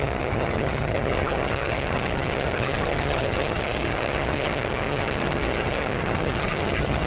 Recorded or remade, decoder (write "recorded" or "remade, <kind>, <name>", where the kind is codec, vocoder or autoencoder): remade, vocoder, HiFi-GAN